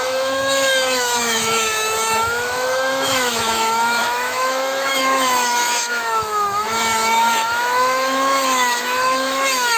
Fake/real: fake